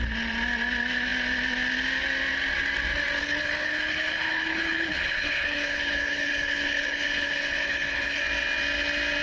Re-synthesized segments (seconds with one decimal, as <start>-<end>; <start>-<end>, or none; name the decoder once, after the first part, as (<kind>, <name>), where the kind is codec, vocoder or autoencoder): 3.2-8.2 (codec, HILCodec)